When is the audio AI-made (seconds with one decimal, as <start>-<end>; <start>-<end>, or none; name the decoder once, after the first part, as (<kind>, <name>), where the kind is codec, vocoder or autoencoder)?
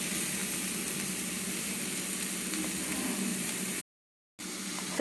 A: 3.3-3.8 (vocoder, BigVGAN v2)